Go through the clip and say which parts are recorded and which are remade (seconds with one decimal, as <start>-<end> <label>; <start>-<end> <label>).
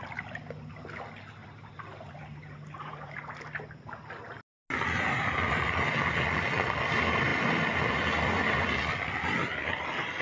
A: 0.0-1.4 recorded; 1.4-3.2 remade; 3.2-10.2 recorded